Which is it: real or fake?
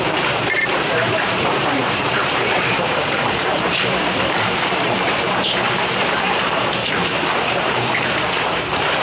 fake